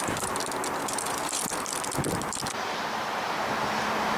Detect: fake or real real